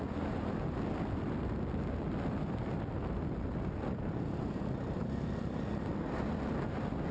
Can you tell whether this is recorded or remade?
recorded